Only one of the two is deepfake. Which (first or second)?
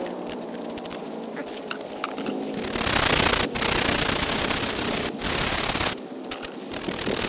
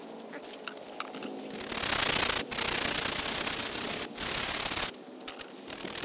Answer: first